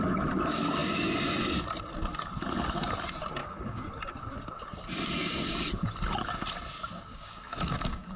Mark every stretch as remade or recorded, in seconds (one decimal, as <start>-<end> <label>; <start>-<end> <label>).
0.0-3.4 recorded; 3.4-3.9 remade; 3.9-7.1 recorded; 7.1-8.2 remade